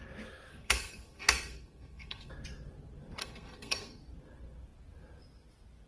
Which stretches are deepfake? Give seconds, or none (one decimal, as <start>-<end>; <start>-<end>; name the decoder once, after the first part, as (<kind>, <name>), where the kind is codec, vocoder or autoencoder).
0.5-2.3 (codec, SNAC); 3.2-4.0